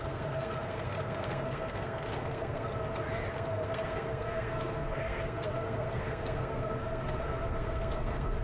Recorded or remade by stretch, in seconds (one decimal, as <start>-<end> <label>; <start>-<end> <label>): 0.0-2.7 remade; 2.7-3.3 recorded; 3.3-8.4 remade